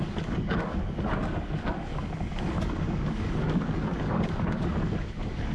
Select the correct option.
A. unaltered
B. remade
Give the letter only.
B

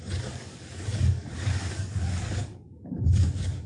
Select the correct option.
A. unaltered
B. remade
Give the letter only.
B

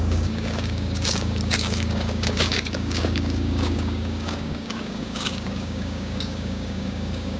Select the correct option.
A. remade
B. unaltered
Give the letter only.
A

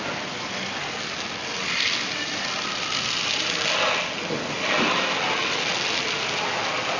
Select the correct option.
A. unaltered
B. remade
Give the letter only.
A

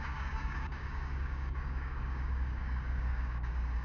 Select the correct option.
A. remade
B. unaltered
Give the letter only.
A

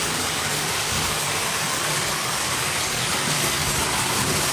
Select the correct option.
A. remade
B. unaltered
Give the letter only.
A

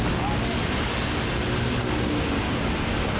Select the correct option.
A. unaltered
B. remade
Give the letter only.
A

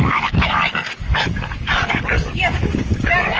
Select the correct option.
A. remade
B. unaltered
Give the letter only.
A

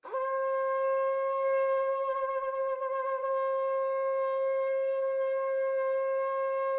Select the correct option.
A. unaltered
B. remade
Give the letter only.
B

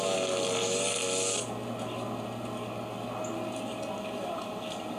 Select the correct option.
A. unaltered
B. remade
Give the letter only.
A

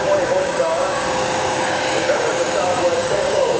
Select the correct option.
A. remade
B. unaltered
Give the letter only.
A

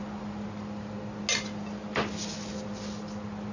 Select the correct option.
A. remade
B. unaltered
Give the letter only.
B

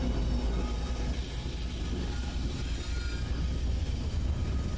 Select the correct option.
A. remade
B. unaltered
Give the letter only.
B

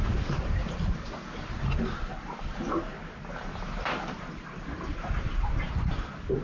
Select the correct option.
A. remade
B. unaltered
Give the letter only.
B